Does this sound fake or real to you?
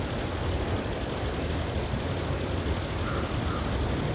real